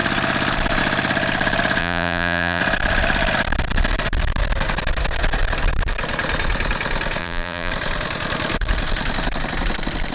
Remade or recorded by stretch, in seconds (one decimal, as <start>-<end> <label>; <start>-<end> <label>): 0.0-1.8 recorded; 1.8-2.6 remade; 2.6-7.2 recorded; 7.2-7.7 remade; 7.7-10.1 recorded